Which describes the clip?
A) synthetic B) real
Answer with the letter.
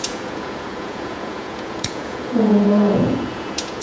A